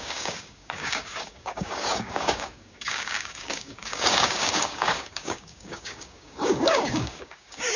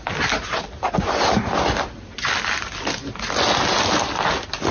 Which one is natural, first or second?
second